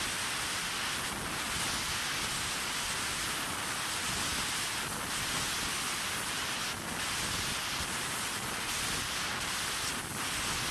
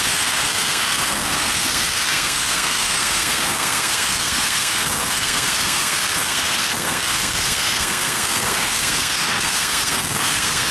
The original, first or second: first